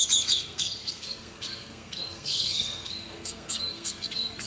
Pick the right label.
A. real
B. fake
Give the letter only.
B